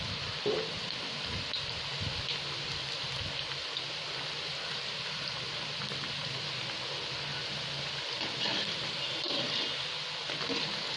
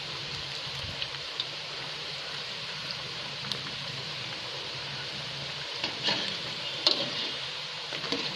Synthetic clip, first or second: second